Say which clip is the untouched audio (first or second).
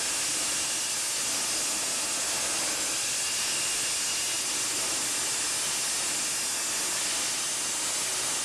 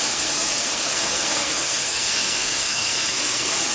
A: first